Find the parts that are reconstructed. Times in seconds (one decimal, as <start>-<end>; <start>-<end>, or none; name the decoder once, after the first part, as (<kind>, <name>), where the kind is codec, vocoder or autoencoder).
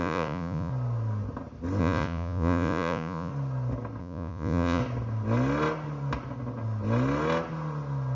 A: 0.0-0.7 (vocoder, Vocos); 1.8-3.3; 4.0-4.8